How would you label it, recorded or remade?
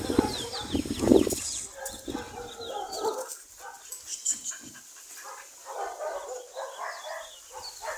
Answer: recorded